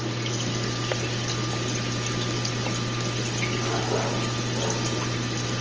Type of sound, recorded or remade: recorded